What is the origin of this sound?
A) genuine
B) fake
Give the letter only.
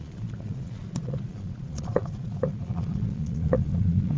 B